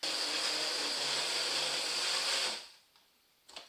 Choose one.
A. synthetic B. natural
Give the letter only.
B